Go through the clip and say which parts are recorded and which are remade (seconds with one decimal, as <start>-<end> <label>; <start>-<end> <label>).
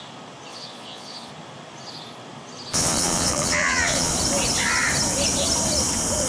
0.0-0.5 recorded; 0.5-1.3 remade; 1.3-2.7 recorded; 2.7-4.1 remade; 4.1-6.3 recorded